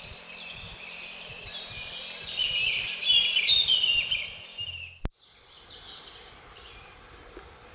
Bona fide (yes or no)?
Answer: yes